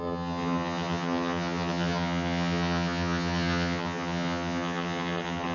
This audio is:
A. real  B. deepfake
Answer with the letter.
B